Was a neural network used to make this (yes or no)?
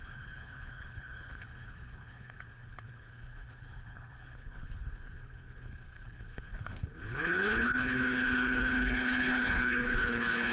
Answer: yes